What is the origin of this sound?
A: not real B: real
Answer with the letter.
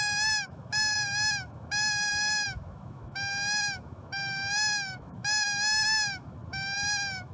A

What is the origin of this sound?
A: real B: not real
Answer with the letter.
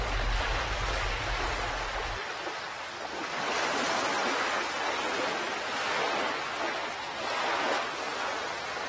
A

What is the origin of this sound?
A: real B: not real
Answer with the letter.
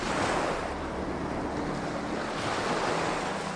A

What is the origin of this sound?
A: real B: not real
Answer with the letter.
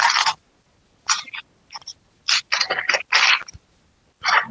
A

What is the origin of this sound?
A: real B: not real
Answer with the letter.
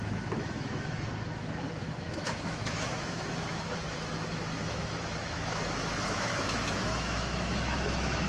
B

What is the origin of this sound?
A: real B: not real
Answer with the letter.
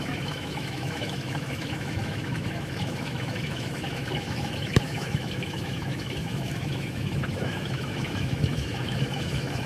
B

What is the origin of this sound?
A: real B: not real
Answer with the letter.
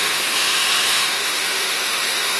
B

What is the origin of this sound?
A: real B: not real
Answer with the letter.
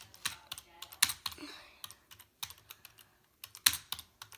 A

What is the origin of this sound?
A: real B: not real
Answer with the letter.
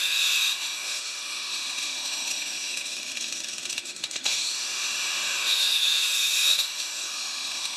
B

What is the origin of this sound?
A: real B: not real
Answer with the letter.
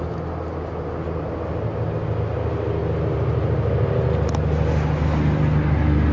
A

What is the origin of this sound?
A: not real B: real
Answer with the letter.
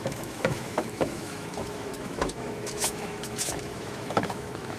A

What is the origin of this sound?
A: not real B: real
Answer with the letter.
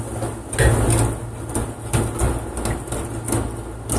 B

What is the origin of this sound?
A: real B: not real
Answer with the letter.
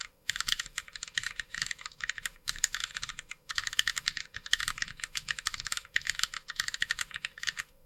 B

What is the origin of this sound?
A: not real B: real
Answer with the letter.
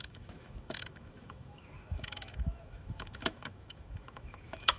A